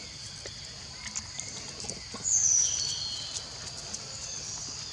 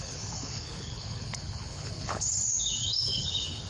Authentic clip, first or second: first